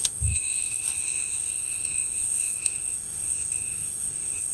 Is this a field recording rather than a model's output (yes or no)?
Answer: no